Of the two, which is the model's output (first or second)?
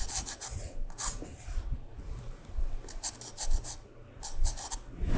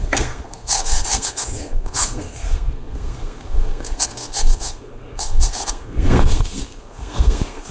second